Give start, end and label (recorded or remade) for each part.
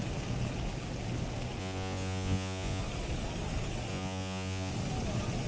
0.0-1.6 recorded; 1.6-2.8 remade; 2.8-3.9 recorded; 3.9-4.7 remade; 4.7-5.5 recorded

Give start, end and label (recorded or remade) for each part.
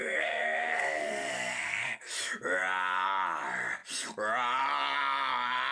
0.0-2.1 remade; 2.1-5.7 recorded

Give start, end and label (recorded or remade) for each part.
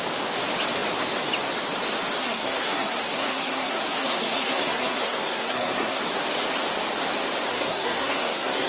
0.0-2.2 recorded; 2.2-6.0 remade; 6.0-7.5 recorded; 7.5-8.7 remade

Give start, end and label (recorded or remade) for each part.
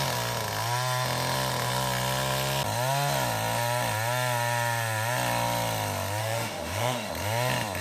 0.0-6.2 recorded; 6.2-7.1 remade; 7.1-7.8 recorded